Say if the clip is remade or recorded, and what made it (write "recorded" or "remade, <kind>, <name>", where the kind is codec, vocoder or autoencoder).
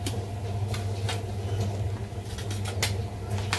recorded